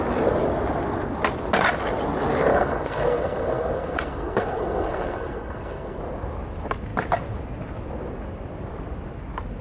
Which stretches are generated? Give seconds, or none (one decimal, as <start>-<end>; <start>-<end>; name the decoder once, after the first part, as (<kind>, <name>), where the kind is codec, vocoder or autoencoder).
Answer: 2.5-6.0 (codec, SNAC)